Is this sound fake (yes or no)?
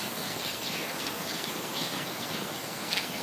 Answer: yes